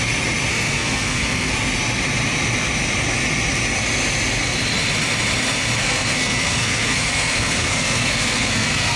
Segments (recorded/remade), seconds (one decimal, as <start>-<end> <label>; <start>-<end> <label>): 0.0-0.5 recorded; 0.5-1.5 remade; 1.5-5.8 recorded; 5.8-9.0 remade